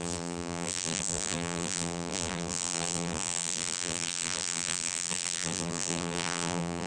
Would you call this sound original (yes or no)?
no